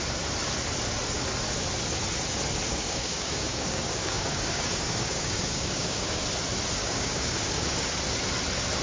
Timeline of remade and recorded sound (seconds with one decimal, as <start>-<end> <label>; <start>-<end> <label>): 0.0-2.7 recorded; 2.7-6.2 remade; 6.2-6.8 recorded; 6.8-7.9 remade; 7.9-8.8 recorded

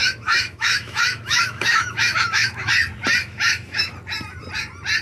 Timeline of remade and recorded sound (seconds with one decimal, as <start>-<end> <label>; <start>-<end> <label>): 0.0-2.7 remade; 2.7-3.2 recorded; 3.2-3.9 remade; 3.9-5.0 recorded

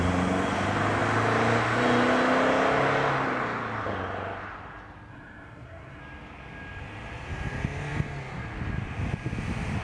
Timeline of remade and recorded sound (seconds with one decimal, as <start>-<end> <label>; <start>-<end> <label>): 0.0-5.1 recorded; 5.1-6.0 remade; 6.0-9.8 recorded

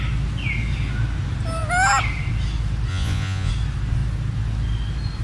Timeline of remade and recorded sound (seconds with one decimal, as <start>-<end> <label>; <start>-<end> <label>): 0.0-2.9 recorded; 2.9-3.5 remade; 3.5-5.2 recorded

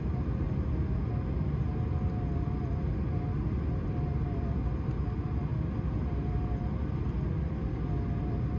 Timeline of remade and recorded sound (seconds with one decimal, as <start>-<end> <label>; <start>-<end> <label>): 0.0-8.6 recorded

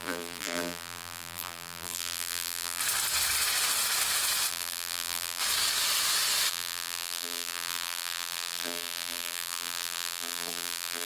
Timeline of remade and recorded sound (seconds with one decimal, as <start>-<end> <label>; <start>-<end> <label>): 0.0-2.8 remade; 2.8-4.5 recorded; 4.5-5.4 remade; 5.4-6.5 recorded; 6.5-11.1 remade